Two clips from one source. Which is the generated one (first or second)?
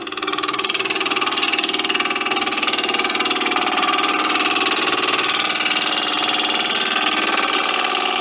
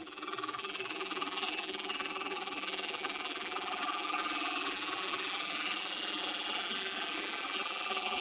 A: second